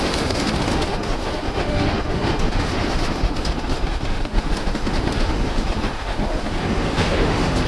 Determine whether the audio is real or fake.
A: fake